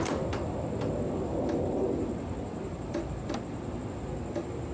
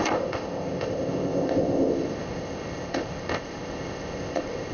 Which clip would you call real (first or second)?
first